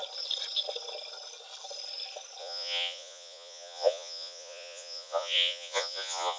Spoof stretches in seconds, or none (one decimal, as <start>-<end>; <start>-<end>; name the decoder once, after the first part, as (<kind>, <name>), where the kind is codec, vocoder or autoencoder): 2.4-6.4 (vocoder, Vocos)

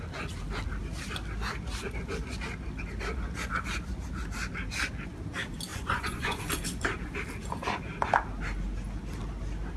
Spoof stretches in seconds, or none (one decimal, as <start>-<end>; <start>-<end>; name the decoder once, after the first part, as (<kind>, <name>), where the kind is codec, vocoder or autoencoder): 5.7-6.4 (vocoder, Vocos)

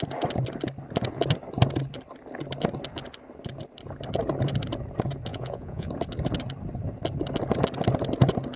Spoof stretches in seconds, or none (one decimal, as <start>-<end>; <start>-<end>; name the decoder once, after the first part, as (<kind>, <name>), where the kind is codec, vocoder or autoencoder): 5.3-5.9 (vocoder, Vocos)

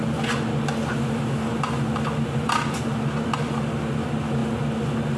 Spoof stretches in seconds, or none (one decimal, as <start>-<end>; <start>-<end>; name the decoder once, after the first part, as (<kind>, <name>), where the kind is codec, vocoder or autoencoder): none

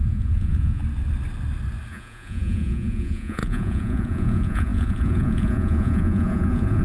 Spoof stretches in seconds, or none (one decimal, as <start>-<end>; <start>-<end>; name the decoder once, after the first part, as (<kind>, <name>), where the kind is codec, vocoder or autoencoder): 0.0-0.8 (vocoder, Vocos); 1.9-6.8

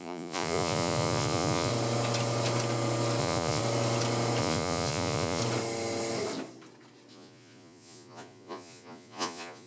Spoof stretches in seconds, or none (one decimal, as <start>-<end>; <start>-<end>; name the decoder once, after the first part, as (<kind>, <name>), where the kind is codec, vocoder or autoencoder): 0.0-1.7 (vocoder, Vocos); 3.2-3.6; 4.4-5.4; 7.1-9.7

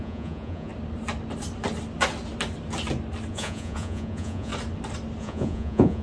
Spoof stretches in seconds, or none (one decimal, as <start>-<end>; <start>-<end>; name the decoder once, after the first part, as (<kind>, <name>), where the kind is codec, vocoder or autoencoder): 0.0-0.7 (vocoder, Vocos); 3.3-4.5; 5.2-6.0

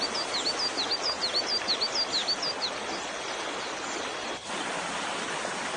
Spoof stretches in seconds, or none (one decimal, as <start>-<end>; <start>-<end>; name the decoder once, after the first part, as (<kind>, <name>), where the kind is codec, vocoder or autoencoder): none